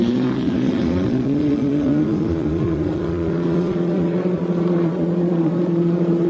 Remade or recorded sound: remade